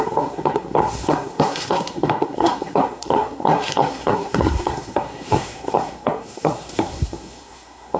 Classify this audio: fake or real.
fake